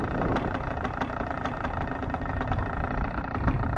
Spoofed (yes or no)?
yes